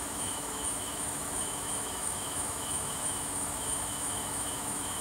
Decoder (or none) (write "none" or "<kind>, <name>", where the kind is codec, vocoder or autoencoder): autoencoder, DAC-VAE